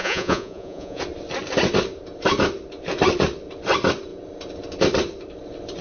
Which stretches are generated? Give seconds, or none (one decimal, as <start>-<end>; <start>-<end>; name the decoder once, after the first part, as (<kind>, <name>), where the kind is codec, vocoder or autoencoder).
0.0-1.0 (vocoder, Vocos)